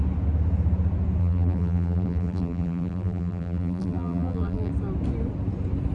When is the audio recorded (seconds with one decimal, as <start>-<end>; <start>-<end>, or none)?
0.0-1.2; 4.7-5.9